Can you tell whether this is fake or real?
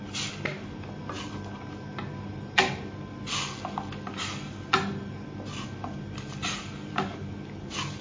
real